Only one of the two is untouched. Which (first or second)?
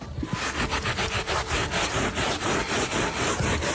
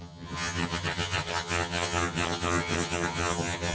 first